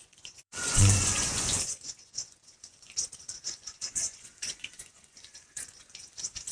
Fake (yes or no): yes